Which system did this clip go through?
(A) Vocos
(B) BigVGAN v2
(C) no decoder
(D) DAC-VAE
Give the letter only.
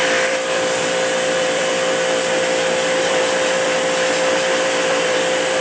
B